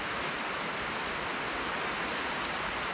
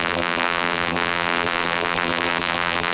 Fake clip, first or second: second